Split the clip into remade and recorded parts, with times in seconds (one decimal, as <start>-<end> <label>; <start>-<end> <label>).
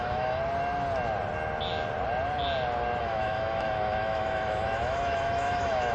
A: 0.0-0.4 remade; 0.4-3.0 recorded; 3.0-5.9 remade